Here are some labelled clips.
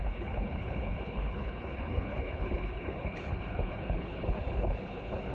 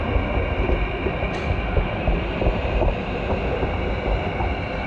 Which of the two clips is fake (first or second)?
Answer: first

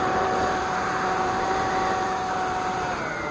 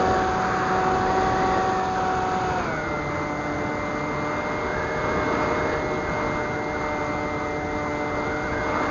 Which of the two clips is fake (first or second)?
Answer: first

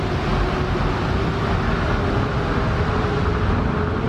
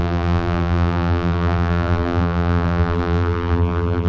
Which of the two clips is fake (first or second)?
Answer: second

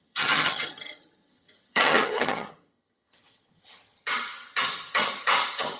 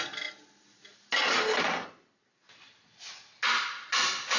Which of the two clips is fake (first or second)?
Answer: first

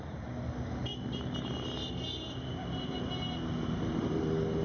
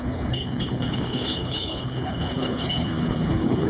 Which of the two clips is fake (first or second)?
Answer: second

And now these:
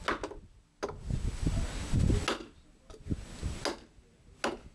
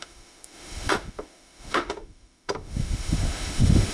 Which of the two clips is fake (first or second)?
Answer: second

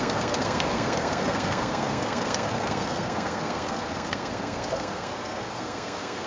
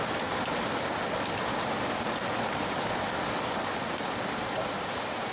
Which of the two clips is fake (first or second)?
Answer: first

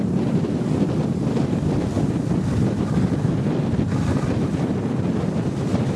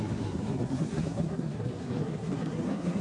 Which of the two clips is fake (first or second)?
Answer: second